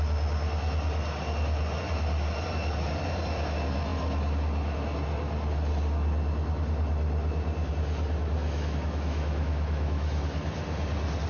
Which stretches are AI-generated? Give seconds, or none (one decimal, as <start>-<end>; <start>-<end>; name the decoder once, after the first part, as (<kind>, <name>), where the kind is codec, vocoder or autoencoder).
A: 8.4-10.2 (autoencoder, DAC-VAE)